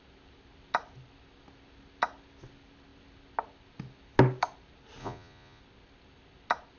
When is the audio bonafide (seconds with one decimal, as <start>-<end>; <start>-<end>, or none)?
0.0-5.0; 5.6-6.8